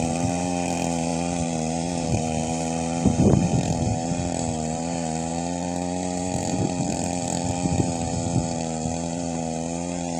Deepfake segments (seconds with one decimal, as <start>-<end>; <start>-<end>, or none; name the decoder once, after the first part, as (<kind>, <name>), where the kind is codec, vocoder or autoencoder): 0.0-10.2 (vocoder, BigVGAN v2)